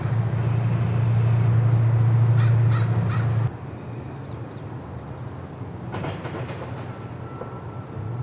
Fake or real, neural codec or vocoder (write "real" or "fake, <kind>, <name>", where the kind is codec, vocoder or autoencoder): real